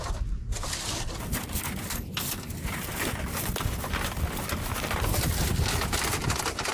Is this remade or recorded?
recorded